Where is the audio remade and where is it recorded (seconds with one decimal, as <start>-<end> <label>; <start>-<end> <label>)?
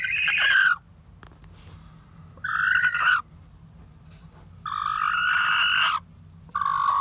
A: 0.0-7.0 recorded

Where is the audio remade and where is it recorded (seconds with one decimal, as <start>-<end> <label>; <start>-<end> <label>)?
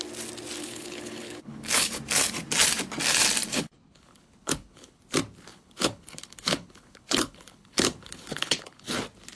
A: 0.0-0.6 recorded; 0.6-2.0 remade; 2.0-3.5 recorded; 3.5-5.0 remade; 5.0-5.5 recorded; 5.5-9.0 remade; 9.0-9.4 recorded